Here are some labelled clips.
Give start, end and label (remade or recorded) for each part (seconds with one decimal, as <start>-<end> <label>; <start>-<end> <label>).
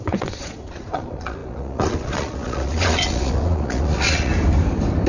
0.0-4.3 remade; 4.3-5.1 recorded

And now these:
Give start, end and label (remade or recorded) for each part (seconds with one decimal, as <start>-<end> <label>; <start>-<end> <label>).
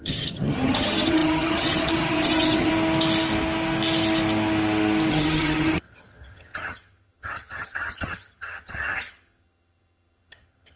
0.0-2.7 remade; 2.7-5.1 recorded; 5.1-10.8 remade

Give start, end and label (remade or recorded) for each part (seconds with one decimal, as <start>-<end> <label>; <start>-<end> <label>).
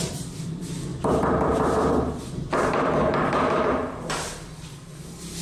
0.0-5.4 remade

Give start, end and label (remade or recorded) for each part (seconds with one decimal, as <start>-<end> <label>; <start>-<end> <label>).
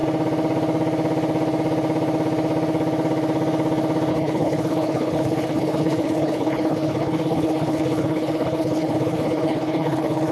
0.0-4.1 recorded; 4.1-10.3 remade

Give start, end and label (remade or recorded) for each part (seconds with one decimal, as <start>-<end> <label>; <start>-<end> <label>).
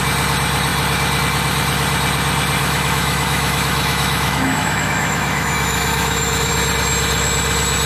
0.0-2.6 recorded; 2.6-6.5 remade; 6.5-7.9 recorded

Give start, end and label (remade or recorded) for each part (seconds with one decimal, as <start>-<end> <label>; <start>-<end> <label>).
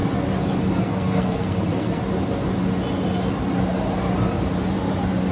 0.0-0.8 recorded; 0.8-2.0 remade; 2.0-5.3 recorded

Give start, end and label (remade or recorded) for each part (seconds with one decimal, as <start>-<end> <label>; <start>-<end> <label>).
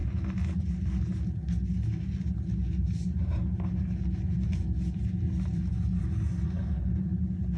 0.0-7.6 recorded